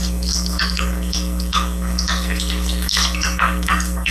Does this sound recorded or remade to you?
remade